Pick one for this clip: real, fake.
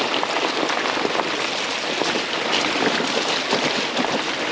real